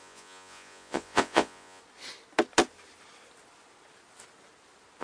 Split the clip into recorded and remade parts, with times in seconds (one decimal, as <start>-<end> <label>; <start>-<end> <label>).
0.0-1.8 remade; 1.8-5.0 recorded